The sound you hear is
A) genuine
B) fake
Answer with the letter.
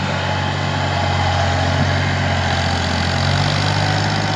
A